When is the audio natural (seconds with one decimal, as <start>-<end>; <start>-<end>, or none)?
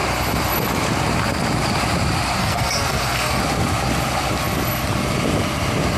0.0-2.4; 3.4-6.0